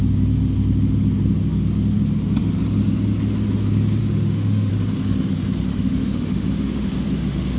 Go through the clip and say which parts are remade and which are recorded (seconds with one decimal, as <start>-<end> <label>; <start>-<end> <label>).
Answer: 0.0-4.0 recorded; 4.0-4.7 remade; 4.7-5.7 recorded; 5.7-7.6 remade